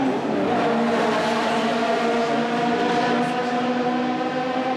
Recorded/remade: recorded